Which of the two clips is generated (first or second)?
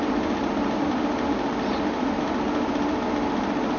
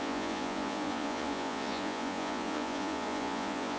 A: second